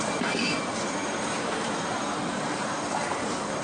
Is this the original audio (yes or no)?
no